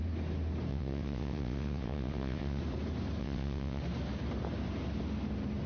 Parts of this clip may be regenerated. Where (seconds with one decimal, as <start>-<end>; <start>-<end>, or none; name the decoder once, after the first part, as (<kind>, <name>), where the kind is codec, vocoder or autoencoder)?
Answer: 0.7-2.6 (vocoder, WaveNeXt); 3.2-3.8